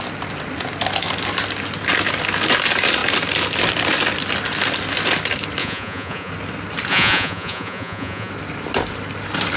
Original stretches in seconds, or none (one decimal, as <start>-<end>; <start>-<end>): 0.0-5.6; 6.3-6.9; 8.3-9.6